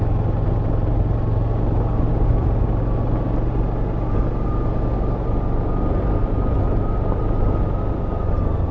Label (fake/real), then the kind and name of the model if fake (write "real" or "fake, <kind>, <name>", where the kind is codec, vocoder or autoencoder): real